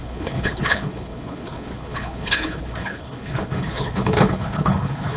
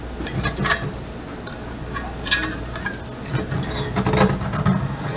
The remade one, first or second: first